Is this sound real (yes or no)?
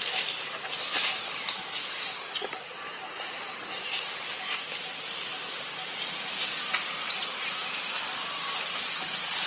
yes